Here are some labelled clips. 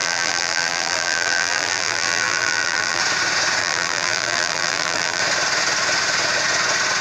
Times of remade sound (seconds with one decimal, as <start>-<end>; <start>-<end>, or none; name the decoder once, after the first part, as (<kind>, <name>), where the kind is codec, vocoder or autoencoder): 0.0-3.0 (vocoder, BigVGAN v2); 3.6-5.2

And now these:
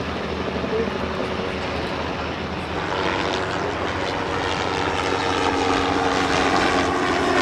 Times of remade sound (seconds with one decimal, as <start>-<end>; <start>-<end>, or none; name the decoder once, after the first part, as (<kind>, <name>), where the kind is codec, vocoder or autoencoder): none

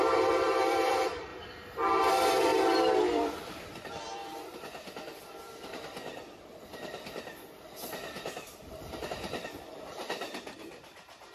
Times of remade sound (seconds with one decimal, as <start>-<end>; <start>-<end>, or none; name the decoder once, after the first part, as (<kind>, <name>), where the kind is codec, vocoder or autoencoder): 0.0-1.3 (vocoder, BigVGAN v2); 2.1-2.5; 3.0-11.3

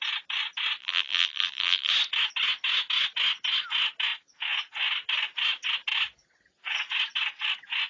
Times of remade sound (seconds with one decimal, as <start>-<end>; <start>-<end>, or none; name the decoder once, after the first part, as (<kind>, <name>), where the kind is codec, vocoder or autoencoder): 0.8-1.9 (vocoder, BigVGAN v2)